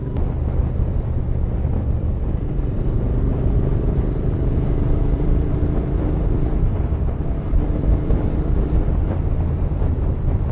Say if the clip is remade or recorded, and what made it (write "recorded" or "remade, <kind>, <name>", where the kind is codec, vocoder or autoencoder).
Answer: remade, vocoder, BigVGAN v2